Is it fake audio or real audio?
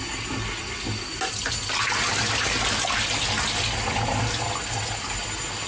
real